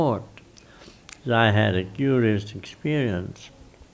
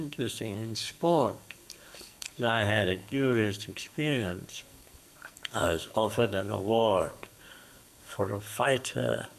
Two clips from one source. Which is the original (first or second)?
first